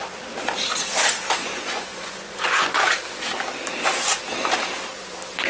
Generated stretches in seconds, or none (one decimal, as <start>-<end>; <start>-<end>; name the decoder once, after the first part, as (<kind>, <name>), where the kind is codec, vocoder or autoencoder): 1.4-2.8 (vocoder, Vocos)